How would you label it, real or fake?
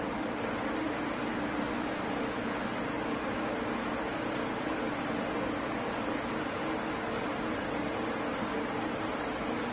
real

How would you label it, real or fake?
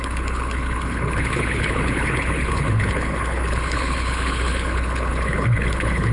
fake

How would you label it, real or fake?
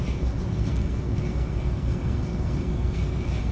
fake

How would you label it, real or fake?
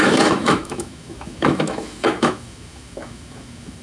fake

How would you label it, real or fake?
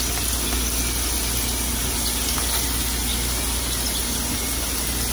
real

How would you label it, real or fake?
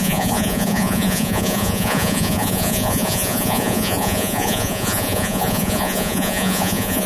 fake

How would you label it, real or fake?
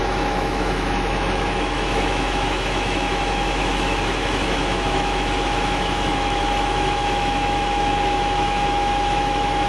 fake